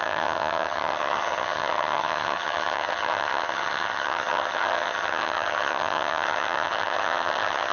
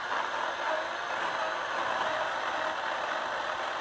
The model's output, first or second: first